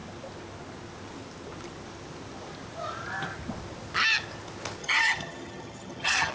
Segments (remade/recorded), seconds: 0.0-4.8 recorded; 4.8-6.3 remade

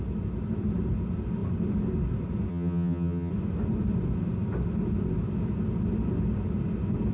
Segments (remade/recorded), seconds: 0.0-2.5 recorded; 2.5-3.3 remade; 3.3-7.1 recorded

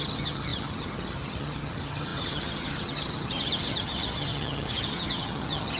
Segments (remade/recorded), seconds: 0.0-5.8 remade

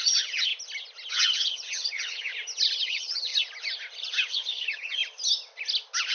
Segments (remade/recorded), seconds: 0.0-0.5 remade; 0.5-1.1 recorded; 1.1-2.3 remade; 2.3-2.8 recorded; 2.8-3.3 remade; 3.3-4.3 recorded; 4.3-5.0 remade; 5.0-6.1 recorded

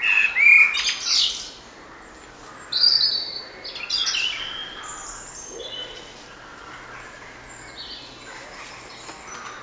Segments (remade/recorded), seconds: 0.0-9.6 recorded

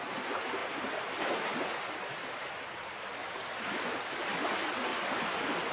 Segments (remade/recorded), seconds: 0.0-5.7 recorded

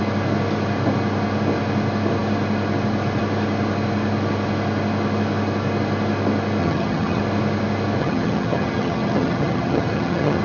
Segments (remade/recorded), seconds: 0.0-6.6 recorded; 6.6-7.2 remade; 7.2-8.0 recorded; 8.0-10.4 remade

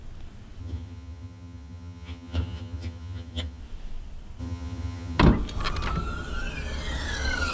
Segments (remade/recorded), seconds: 0.0-0.6 recorded; 0.6-3.6 remade; 3.6-4.4 recorded; 4.4-5.2 remade; 5.2-7.5 recorded